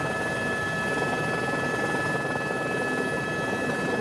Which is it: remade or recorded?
recorded